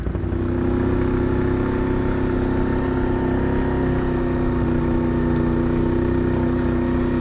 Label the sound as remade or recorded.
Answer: recorded